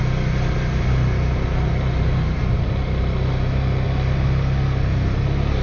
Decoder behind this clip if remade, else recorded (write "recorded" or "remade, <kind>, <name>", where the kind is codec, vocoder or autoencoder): recorded